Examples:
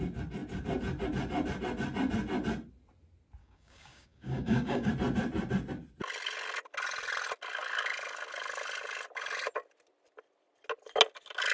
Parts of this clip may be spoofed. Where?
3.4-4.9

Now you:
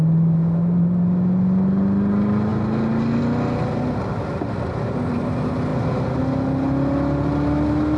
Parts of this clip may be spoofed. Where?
none

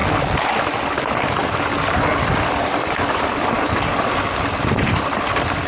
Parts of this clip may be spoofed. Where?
none